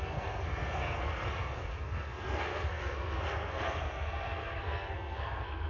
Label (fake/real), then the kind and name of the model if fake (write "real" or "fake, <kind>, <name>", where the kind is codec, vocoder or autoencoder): fake, codec, SNAC